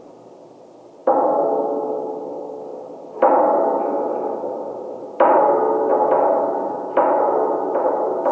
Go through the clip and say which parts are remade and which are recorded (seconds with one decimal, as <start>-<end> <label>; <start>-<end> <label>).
0.0-2.7 recorded; 2.7-5.4 remade; 5.4-8.3 recorded